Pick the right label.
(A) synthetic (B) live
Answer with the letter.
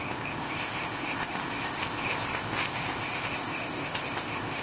A